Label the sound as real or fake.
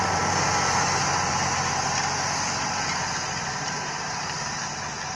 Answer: real